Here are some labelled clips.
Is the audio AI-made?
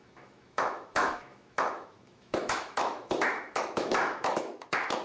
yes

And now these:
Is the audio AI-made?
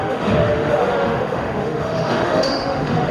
yes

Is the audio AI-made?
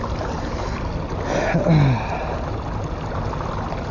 no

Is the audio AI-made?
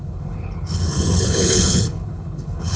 yes